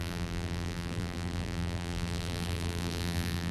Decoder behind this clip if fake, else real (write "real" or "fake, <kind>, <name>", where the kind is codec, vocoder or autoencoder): fake, vocoder, BigVGAN v2